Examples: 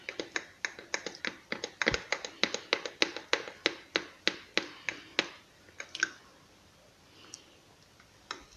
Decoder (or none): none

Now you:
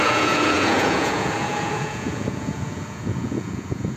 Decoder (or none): vocoder, Vocos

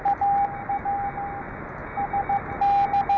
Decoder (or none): none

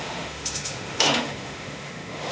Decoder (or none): autoencoder, DAC-VAE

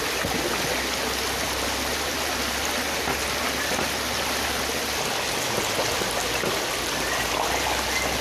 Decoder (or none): none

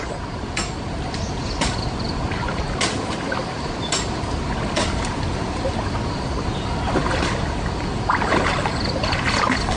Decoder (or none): none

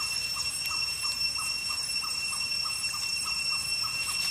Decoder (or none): none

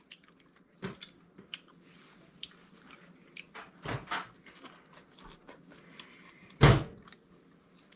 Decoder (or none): none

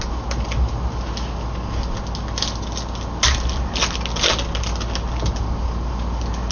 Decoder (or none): none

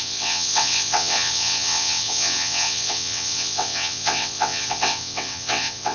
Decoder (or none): vocoder, WaveNeXt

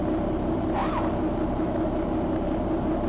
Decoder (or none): none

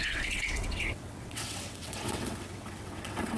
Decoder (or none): vocoder, WaveNeXt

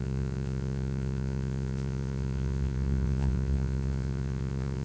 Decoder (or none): vocoder, Vocos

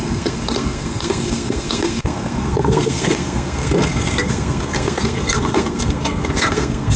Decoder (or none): codec, SNAC